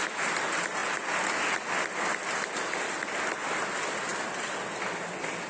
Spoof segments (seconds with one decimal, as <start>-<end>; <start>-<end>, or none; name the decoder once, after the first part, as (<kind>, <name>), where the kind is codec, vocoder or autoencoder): none